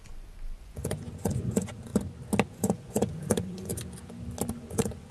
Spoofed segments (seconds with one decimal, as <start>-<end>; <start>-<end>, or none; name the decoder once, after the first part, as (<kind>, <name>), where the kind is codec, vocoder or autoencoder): 0.0-1.9 (vocoder, Vocos); 2.5-3.7; 4.5-5.1